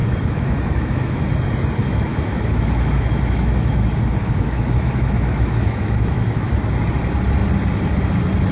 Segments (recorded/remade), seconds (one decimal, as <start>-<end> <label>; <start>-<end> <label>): 0.0-1.3 remade; 1.3-1.8 recorded; 1.8-6.5 remade; 6.5-8.5 recorded